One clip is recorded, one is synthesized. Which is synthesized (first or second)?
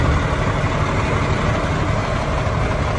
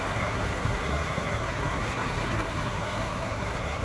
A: second